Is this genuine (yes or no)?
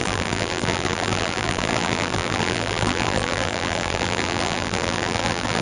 no